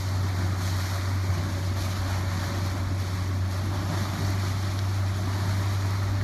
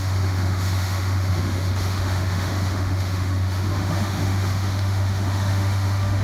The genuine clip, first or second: first